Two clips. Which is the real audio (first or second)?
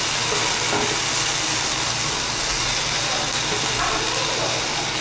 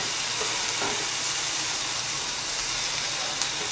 first